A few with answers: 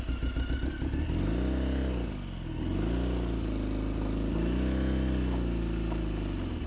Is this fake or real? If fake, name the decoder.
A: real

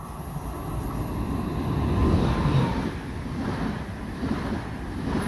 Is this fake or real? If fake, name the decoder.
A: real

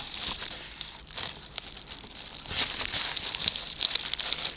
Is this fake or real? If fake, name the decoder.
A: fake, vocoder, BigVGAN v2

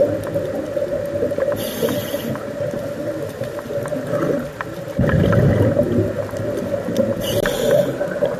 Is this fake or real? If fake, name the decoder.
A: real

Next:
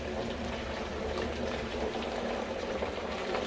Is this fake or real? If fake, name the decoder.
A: fake, vocoder, BigVGAN v2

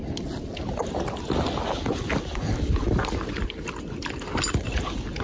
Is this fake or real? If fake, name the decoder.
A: real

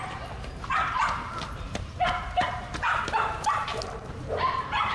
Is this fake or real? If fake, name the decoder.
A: fake, vocoder, BigVGAN v2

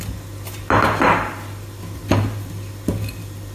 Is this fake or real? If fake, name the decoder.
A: real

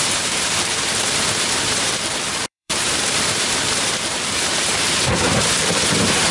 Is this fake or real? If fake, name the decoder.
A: fake, vocoder, BigVGAN v2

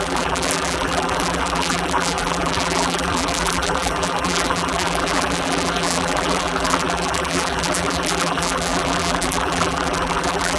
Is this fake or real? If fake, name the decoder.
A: fake, vocoder, BigVGAN v2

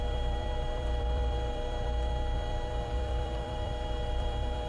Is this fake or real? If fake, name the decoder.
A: fake, vocoder, BigVGAN v2